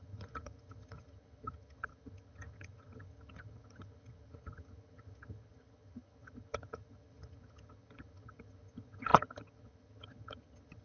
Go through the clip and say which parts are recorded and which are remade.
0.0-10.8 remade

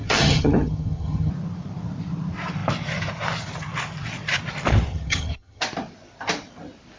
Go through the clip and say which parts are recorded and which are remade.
0.0-1.3 remade; 1.3-4.9 recorded; 4.9-5.6 remade; 5.6-7.0 recorded

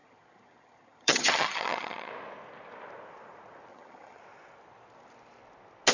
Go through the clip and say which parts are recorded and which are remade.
0.0-2.1 remade; 2.1-3.7 recorded; 3.7-4.2 remade; 4.2-5.9 recorded

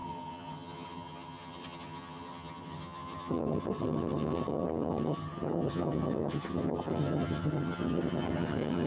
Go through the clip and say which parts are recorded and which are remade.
0.0-8.9 remade

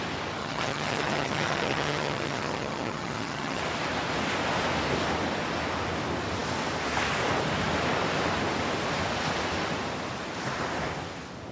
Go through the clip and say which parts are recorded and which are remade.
0.0-0.4 recorded; 0.4-3.6 remade; 3.6-11.5 recorded

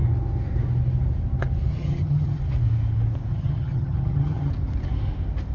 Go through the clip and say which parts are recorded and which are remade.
0.0-1.7 recorded; 1.7-2.4 remade; 2.4-3.3 recorded; 3.3-4.5 remade; 4.5-5.5 recorded

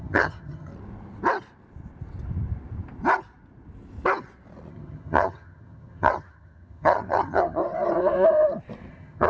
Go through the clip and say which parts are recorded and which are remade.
0.0-0.7 remade; 0.7-4.7 recorded; 4.7-7.6 remade; 7.6-8.9 recorded; 8.9-9.3 remade

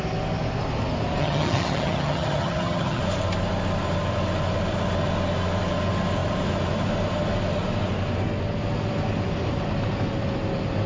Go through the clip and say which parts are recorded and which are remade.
0.0-1.2 recorded; 1.2-3.0 remade; 3.0-10.9 recorded